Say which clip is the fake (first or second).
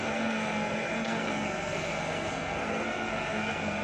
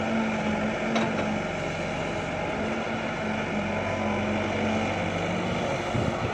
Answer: first